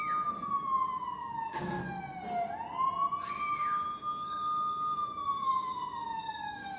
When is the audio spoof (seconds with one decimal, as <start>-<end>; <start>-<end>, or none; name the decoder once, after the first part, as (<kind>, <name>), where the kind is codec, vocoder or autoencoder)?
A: 1.2-1.8 (codec, DAC); 5.0-6.8

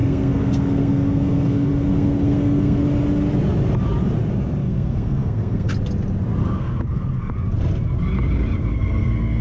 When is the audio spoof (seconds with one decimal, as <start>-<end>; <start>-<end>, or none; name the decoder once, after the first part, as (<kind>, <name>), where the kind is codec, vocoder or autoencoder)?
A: 0.0-2.8 (codec, SNAC); 4.6-5.7; 6.4-7.3; 8.6-9.4

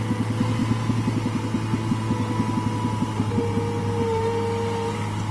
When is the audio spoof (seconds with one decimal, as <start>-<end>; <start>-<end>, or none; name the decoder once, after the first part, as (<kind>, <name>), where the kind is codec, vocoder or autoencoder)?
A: none

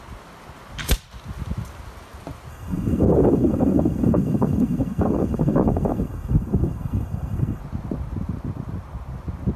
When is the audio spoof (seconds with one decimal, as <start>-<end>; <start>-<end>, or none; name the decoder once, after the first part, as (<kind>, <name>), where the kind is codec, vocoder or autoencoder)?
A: 2.5-7.6 (codec, SNAC)

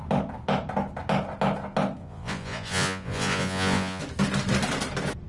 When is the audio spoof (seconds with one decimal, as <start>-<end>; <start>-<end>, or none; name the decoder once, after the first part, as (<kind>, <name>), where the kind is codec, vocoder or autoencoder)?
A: 2.0-4.0 (vocoder, Vocos)

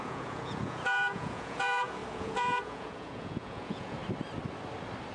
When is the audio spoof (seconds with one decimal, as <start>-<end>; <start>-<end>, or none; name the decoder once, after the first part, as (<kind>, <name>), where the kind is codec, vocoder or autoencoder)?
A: 0.0-4.0 (vocoder, Vocos)

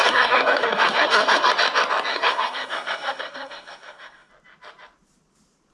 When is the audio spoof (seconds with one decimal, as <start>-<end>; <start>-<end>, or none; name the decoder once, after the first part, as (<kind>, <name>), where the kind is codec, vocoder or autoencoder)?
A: 0.0-1.5 (codec, SNAC); 2.1-4.3